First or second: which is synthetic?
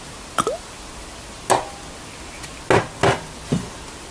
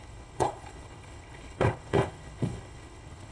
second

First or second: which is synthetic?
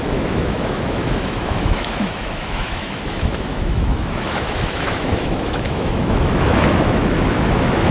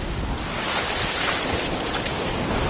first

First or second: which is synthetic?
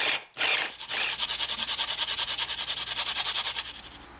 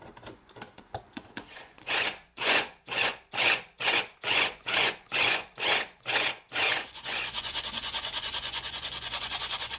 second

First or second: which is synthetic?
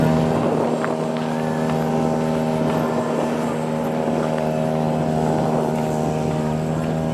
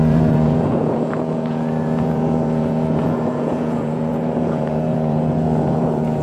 second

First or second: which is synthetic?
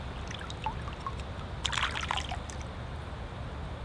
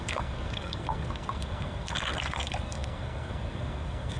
second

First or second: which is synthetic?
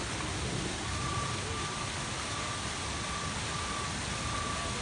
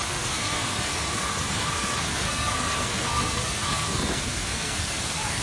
second